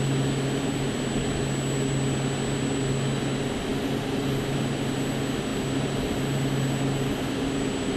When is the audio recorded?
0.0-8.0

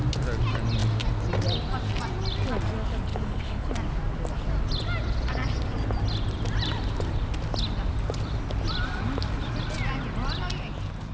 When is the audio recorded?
0.0-3.1; 3.7-11.1

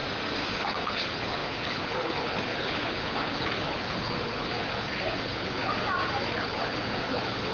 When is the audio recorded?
0.0-0.5; 5.7-6.2

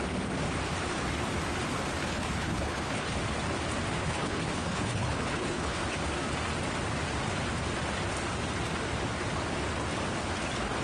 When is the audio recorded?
0.0-2.0; 3.2-4.0; 5.8-10.8

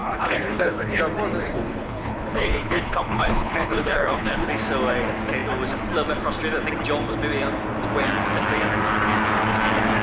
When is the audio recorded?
1.0-1.4; 4.5-10.0

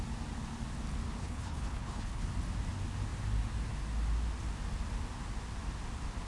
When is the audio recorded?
0.0-1.2; 2.3-6.3

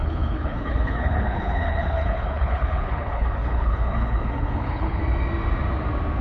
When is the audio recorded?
5.0-6.2